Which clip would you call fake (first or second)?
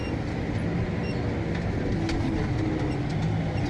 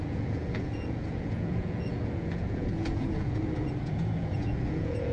second